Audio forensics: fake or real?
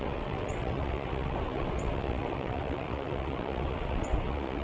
fake